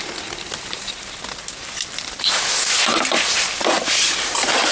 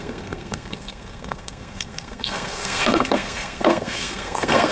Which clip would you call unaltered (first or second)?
first